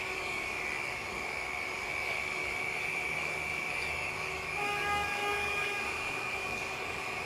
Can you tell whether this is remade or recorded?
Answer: remade